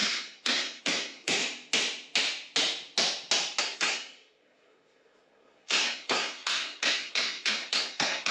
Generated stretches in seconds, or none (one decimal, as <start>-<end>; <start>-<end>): 0.0-1.4; 3.6-8.3